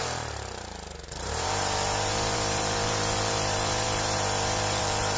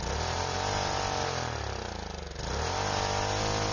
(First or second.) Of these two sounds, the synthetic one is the first